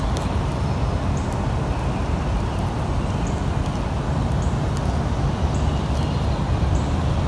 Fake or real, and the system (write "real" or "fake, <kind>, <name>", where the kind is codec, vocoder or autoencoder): real